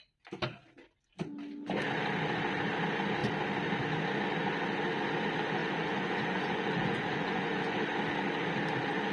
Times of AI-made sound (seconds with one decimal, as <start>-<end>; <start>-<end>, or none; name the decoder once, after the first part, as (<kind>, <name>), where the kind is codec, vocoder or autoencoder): 5.6-7.8 (vocoder, Vocos)